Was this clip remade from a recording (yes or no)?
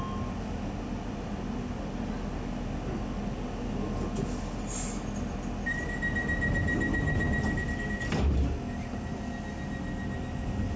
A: no